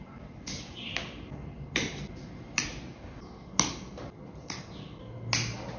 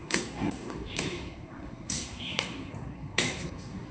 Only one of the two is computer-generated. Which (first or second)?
second